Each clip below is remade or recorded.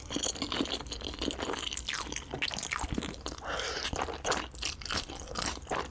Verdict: recorded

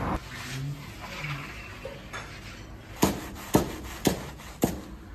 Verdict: recorded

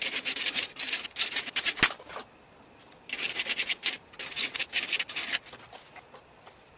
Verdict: recorded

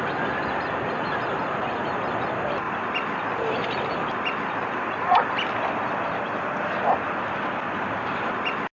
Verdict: recorded